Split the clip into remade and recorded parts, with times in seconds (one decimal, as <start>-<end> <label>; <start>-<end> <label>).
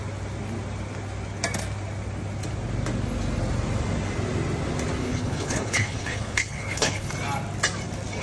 0.0-5.0 recorded; 5.0-7.1 remade; 7.1-8.2 recorded